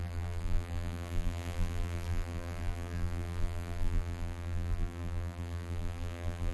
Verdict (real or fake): fake